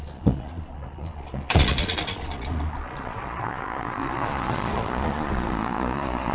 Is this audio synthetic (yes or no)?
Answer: yes